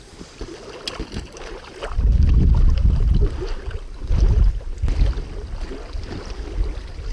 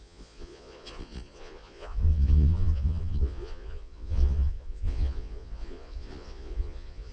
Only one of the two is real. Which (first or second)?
first